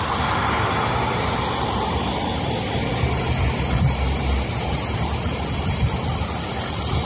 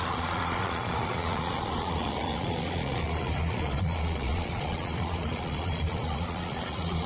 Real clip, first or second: first